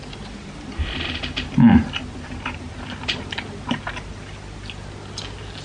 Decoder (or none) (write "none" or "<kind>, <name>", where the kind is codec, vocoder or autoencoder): none